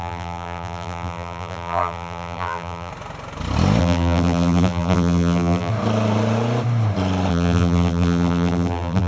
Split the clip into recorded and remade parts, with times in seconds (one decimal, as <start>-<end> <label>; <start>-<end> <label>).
0.0-2.9 remade; 2.9-3.8 recorded; 3.8-5.7 remade; 5.7-7.3 recorded; 7.3-9.1 remade